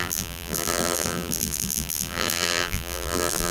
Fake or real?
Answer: fake